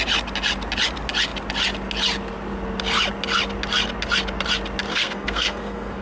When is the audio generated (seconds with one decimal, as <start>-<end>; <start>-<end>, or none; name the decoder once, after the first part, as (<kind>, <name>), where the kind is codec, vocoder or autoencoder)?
4.9-6.0 (codec, SNAC)